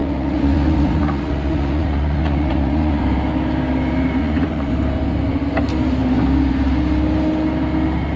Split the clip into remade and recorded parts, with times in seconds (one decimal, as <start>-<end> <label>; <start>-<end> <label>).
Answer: 0.0-3.0 remade; 3.0-4.2 recorded; 4.2-4.7 remade; 4.7-8.2 recorded

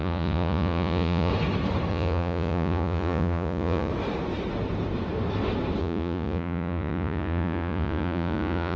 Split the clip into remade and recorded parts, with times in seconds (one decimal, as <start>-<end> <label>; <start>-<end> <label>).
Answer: 0.0-1.3 remade; 1.3-1.9 recorded; 1.9-3.9 remade; 3.9-5.8 recorded; 5.8-8.8 remade

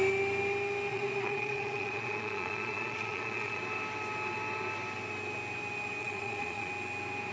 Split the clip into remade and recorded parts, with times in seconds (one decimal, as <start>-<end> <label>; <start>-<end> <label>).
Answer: 0.0-0.9 recorded; 0.9-3.6 remade; 3.6-6.0 recorded; 6.0-6.7 remade; 6.7-7.3 recorded

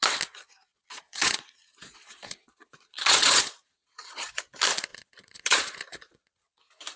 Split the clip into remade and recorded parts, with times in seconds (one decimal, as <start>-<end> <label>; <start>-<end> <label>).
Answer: 0.0-0.7 recorded; 0.7-4.4 remade; 4.4-4.9 recorded; 4.9-6.6 remade; 6.6-7.0 recorded

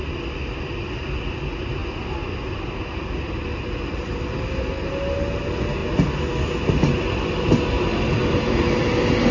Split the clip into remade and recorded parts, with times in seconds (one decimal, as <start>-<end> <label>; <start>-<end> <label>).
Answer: 0.0-9.3 recorded

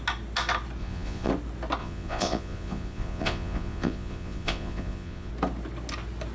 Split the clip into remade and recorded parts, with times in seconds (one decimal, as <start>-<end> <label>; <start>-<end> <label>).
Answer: 0.0-0.8 recorded; 0.8-1.3 remade; 1.3-1.8 recorded; 1.8-5.3 remade; 5.3-6.3 recorded

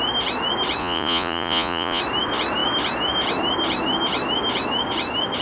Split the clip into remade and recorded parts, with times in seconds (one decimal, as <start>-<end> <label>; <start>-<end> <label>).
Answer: 0.0-0.8 recorded; 0.8-2.0 remade; 2.0-5.4 recorded